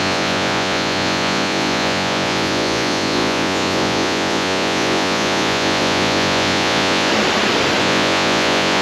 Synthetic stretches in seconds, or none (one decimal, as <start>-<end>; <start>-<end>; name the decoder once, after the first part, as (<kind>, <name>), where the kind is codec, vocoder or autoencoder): 0.0-7.1 (vocoder, Vocos); 7.8-8.8